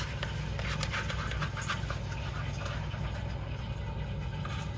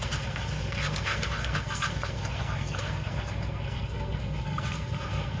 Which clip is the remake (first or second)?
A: second